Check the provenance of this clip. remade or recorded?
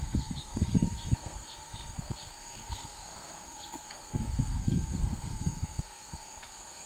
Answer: remade